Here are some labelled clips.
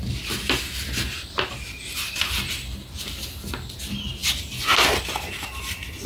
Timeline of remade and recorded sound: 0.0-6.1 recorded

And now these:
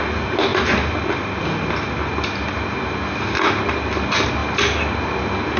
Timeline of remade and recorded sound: 0.0-4.4 recorded; 4.4-5.0 remade; 5.0-5.6 recorded

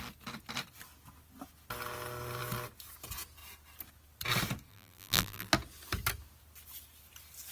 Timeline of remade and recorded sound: 0.0-4.7 recorded; 4.7-5.5 remade; 5.5-7.5 recorded